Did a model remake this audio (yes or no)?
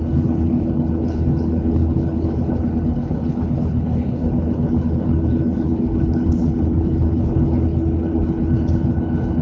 yes